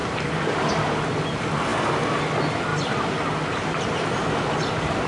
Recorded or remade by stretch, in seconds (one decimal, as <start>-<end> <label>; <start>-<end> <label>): 0.0-1.0 remade; 1.0-2.7 recorded; 2.7-4.2 remade; 4.2-5.1 recorded